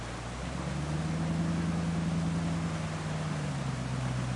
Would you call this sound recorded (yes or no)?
yes